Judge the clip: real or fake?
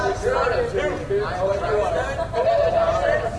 fake